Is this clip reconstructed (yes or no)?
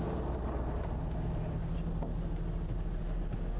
no